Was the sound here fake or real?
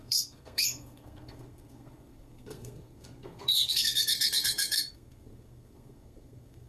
fake